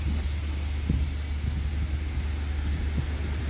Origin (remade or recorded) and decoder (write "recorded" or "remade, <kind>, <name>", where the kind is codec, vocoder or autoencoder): recorded